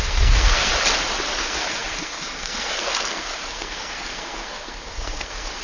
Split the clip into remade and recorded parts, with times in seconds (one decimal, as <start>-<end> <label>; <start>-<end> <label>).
0.0-0.7 remade; 0.7-1.4 recorded; 1.4-5.6 remade